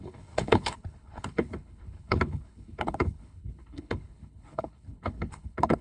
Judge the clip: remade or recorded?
remade